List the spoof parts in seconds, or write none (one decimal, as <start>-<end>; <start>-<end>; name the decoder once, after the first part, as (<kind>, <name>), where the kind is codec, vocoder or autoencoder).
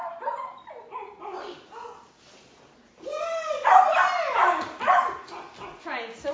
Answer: none